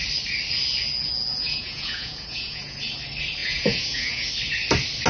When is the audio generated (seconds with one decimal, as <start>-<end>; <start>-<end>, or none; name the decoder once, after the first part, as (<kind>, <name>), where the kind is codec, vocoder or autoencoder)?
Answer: 1.3-2.8 (vocoder, Vocos); 3.4-4.3